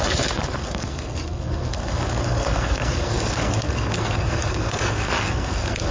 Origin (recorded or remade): remade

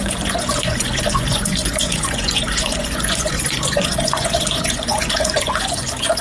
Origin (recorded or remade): remade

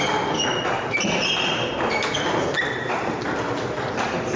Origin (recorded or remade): recorded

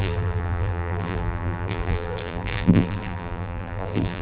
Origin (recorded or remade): remade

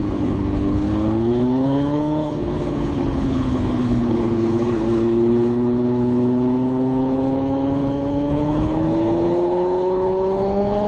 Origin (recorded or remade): remade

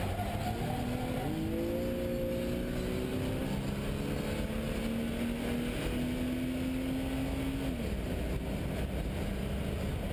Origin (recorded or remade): recorded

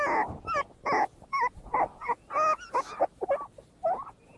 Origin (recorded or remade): recorded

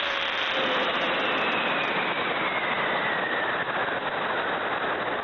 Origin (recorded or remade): recorded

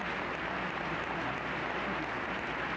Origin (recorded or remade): remade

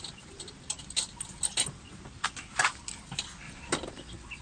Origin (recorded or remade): recorded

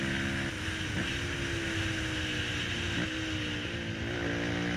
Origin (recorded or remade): recorded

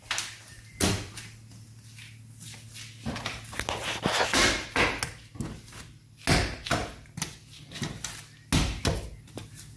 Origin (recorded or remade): recorded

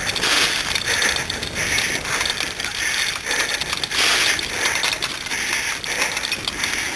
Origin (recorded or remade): recorded